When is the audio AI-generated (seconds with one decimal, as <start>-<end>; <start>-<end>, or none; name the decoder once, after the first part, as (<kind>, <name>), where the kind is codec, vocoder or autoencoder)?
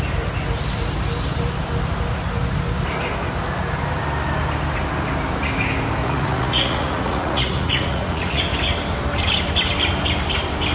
6.0-8.4 (vocoder, Vocos)